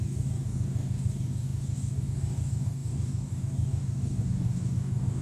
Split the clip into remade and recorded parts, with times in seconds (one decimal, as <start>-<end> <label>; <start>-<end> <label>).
0.0-5.2 remade